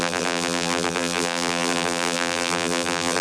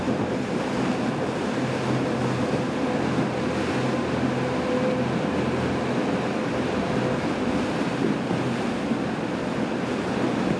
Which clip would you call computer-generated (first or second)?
first